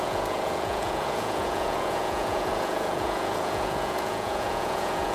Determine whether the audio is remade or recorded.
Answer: remade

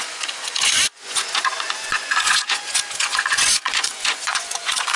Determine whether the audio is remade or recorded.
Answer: remade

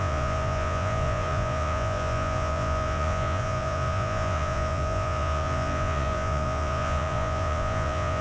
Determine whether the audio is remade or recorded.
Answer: remade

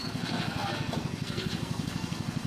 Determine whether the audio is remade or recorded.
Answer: remade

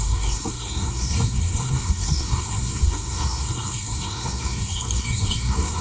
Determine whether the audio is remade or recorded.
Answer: remade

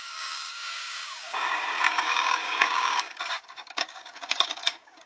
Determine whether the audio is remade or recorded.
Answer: remade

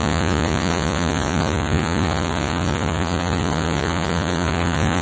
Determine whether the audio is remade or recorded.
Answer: remade